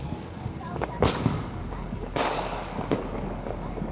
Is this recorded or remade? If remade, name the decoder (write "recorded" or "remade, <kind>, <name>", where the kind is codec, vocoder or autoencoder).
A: remade, codec, DAC